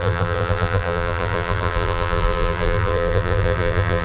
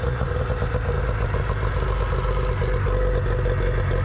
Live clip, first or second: second